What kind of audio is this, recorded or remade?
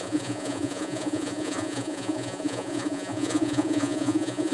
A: remade